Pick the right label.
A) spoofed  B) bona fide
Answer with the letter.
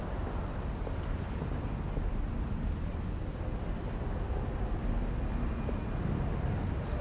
B